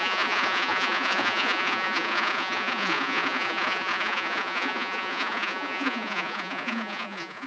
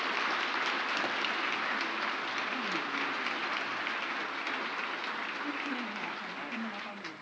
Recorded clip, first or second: second